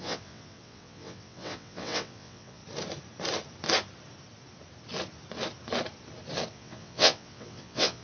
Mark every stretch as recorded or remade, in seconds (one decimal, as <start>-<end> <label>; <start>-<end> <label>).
0.0-2.6 remade; 2.6-6.5 recorded; 6.5-8.0 remade